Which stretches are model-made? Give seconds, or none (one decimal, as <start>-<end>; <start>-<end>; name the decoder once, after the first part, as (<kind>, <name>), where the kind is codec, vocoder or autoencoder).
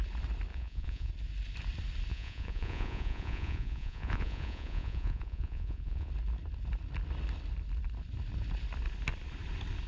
0.5-1.1 (vocoder, Vocos); 2.1-6.1